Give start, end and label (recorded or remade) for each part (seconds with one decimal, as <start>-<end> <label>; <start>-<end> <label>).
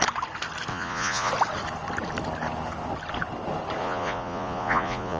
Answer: 0.0-0.7 recorded; 0.7-1.3 remade; 1.3-3.8 recorded; 3.8-5.2 remade